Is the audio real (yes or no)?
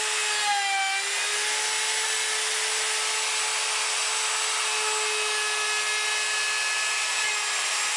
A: yes